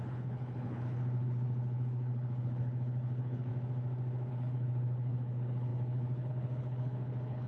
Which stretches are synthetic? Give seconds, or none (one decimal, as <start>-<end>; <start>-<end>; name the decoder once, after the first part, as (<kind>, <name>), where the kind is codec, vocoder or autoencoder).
0.0-3.5 (codec, HILCodec); 4.3-7.5